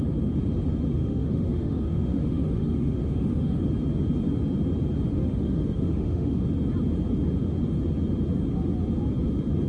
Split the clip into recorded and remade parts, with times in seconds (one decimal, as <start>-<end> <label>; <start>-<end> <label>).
0.0-1.0 recorded; 1.0-3.6 remade; 3.6-5.1 recorded; 5.1-6.4 remade; 6.4-9.7 recorded